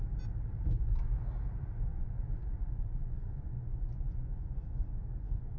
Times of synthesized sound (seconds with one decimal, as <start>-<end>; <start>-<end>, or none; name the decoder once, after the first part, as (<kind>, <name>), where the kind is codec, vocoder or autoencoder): 1.9-5.6 (vocoder, Vocos)